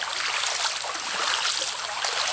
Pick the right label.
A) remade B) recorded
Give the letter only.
B